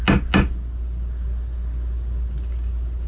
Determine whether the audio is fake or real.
real